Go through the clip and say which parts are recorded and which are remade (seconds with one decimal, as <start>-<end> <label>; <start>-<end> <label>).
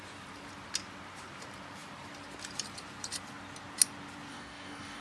0.0-4.3 recorded; 4.3-5.0 remade